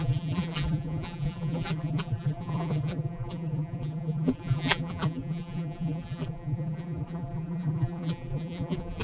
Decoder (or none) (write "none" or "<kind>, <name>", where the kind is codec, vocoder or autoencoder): vocoder, BigVGAN v2